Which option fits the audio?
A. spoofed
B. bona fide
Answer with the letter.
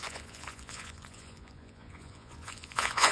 A